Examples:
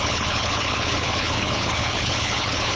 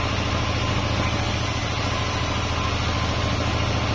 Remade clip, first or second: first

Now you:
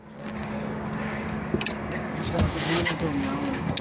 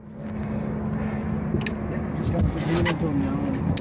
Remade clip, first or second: first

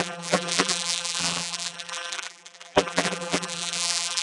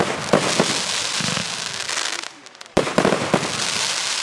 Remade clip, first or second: first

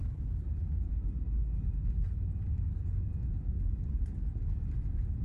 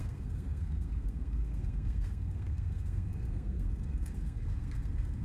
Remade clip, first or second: second